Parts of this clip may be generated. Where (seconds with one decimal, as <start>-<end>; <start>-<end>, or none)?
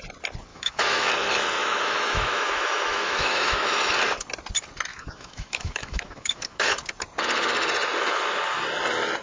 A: 0.5-1.1; 1.6-3.9; 4.9-6.7